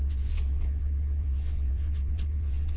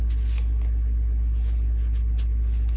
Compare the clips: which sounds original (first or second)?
second